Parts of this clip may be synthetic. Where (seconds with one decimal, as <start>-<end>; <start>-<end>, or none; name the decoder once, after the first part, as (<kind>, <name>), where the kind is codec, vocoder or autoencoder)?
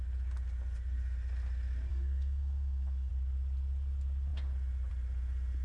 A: 1.9-3.1 (codec, SNAC)